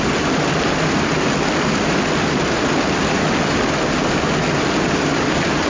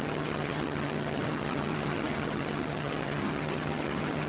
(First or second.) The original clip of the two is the first